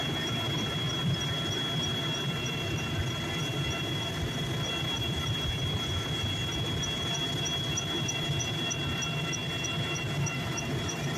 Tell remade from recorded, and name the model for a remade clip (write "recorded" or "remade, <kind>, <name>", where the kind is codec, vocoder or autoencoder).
remade, vocoder, BigVGAN v2